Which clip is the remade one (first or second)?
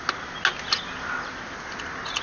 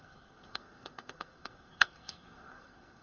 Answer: second